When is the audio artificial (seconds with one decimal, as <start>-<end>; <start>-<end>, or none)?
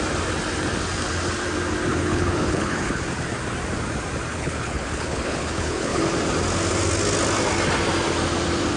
1.9-3.0; 4.3-6.0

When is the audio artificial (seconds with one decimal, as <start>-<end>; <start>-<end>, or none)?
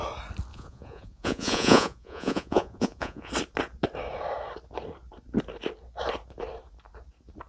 0.5-3.3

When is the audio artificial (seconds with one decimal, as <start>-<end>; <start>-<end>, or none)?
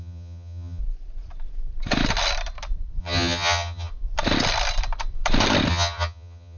0.0-0.8; 3.0-3.9; 5.7-6.6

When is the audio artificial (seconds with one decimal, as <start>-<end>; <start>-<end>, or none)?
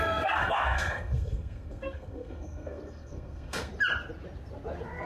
0.0-3.7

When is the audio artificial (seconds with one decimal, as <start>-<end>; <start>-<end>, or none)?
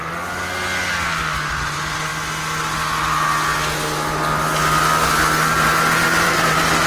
1.5-2.1; 5.5-6.9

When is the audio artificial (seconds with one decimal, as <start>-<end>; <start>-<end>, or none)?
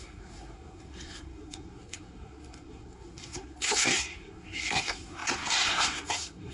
0.0-6.5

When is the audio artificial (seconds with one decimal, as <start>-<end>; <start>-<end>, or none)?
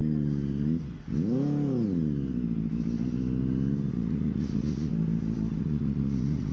3.9-4.9; 5.6-6.5